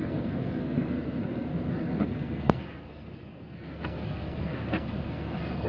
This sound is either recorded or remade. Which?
remade